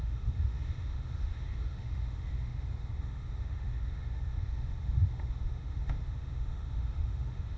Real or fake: fake